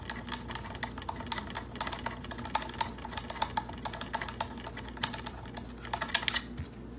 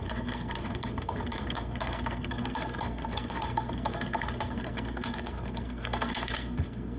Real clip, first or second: first